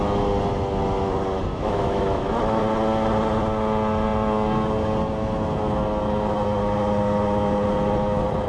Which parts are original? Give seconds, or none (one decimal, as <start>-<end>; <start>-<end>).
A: 0.0-1.5; 2.6-8.5